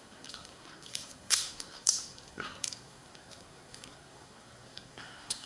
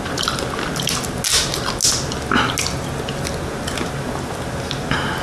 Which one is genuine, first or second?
second